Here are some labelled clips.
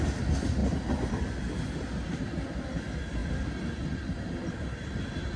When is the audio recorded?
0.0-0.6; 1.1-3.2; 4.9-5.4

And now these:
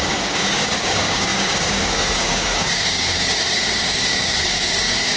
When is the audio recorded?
none

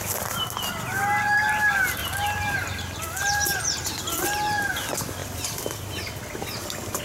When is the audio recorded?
0.0-2.0; 3.6-5.2; 5.9-7.0

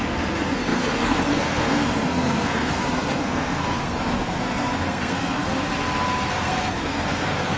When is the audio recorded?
5.4-6.3

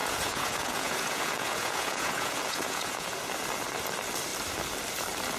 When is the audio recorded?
3.2-5.4

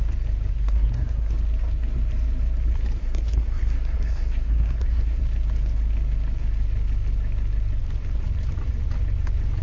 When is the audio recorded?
0.0-0.5; 1.3-3.0; 5.2-9.6